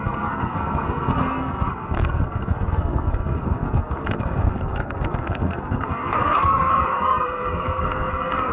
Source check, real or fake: fake